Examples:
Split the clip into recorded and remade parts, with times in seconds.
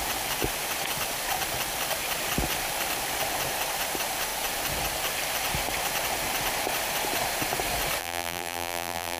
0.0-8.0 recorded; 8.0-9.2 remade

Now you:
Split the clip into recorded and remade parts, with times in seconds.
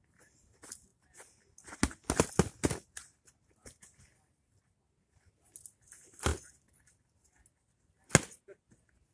0.0-9.1 recorded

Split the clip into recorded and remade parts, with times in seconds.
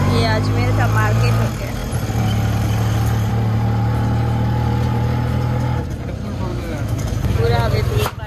0.0-6.5 recorded; 6.5-7.0 remade; 7.0-8.3 recorded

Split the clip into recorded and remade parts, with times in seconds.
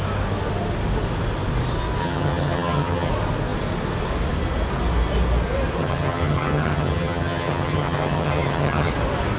0.0-2.0 recorded; 2.0-3.1 remade; 3.1-5.8 recorded; 5.8-8.9 remade; 8.9-9.4 recorded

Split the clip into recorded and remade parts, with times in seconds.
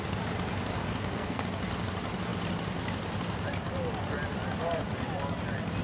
0.0-0.8 recorded; 0.8-1.4 remade; 1.4-5.8 recorded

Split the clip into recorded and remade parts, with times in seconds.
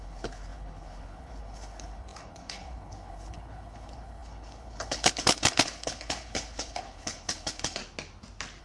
0.0-7.8 remade; 7.8-8.6 recorded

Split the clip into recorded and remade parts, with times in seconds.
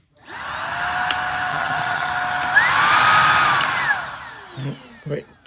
0.0-1.5 recorded; 1.5-2.1 remade; 2.1-5.5 recorded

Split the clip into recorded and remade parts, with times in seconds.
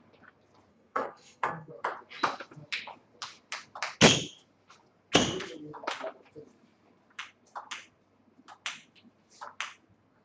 0.0-0.7 recorded; 0.7-1.7 remade; 1.7-10.2 recorded